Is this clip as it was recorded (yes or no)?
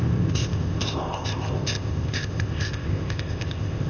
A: no